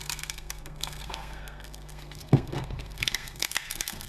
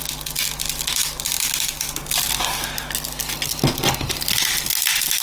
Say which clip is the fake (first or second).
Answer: first